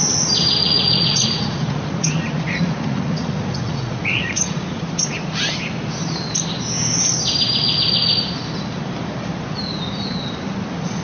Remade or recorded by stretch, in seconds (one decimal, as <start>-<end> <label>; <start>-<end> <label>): 0.0-0.6 recorded; 0.6-5.3 remade; 5.3-11.0 recorded

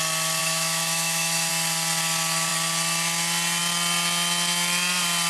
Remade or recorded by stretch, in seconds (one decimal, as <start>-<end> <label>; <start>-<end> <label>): 0.0-0.4 recorded; 0.4-1.5 remade; 1.5-5.3 recorded